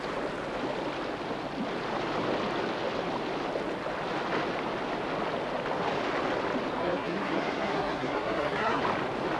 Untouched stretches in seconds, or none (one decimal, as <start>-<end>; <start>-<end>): 0.0-6.8; 8.8-9.4